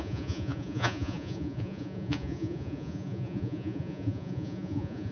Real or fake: fake